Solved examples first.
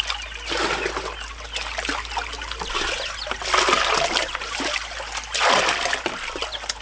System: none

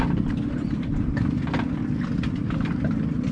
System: none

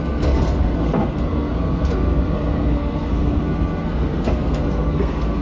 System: codec, SNAC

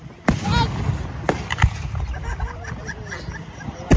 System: none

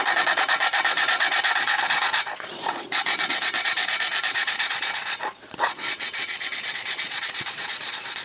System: vocoder, Vocos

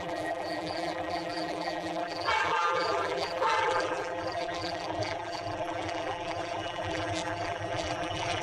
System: vocoder, BigVGAN v2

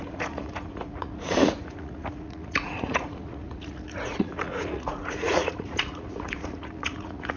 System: vocoder, Vocos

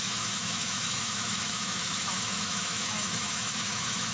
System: autoencoder, DAC-VAE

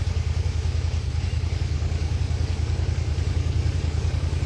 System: codec, DAC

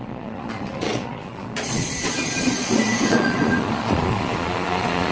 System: vocoder, Vocos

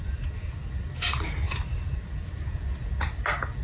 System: none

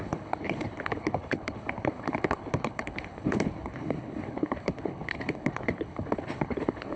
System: codec, HILCodec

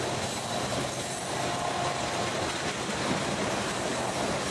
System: none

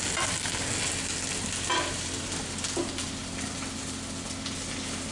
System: none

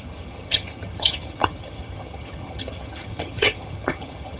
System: vocoder, HiFi-GAN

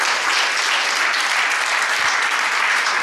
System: none